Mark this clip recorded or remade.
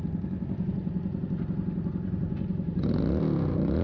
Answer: recorded